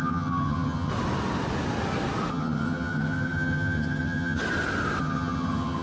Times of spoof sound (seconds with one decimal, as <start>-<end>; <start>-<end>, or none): 0.0-0.9; 2.3-4.4; 5.0-5.8